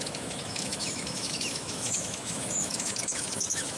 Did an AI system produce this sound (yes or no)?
yes